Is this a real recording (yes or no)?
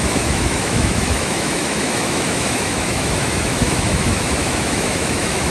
no